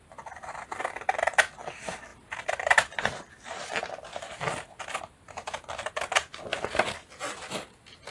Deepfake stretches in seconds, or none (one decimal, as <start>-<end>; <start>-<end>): none